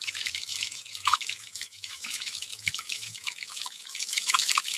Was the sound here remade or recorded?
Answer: remade